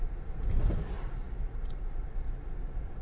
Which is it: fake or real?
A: real